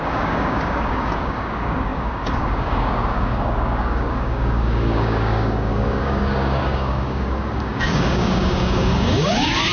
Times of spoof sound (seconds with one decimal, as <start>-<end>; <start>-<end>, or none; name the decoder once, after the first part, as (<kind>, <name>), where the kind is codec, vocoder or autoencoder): 0.0-9.7 (codec, DAC)